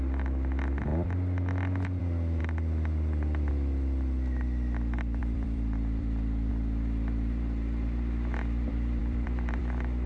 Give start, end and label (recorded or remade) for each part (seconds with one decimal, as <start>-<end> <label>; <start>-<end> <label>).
0.0-5.2 recorded; 5.2-6.5 remade; 6.5-9.0 recorded; 9.0-9.6 remade; 9.6-10.1 recorded